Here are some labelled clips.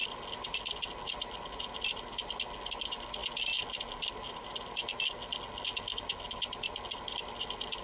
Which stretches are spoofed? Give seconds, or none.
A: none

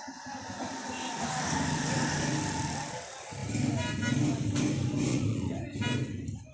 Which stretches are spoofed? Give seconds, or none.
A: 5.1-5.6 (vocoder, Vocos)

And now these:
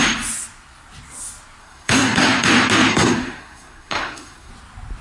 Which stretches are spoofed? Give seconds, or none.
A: 1.6-2.5 (codec, SNAC); 2.9-4.5

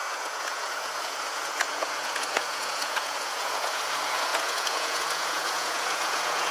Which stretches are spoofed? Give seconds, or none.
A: 0.0-6.5 (vocoder, Vocos)

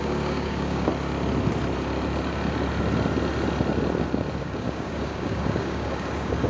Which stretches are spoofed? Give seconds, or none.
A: 0.0-0.9 (codec, DAC); 4.4-6.5

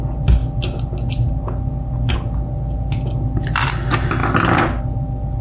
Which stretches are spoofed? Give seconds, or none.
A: none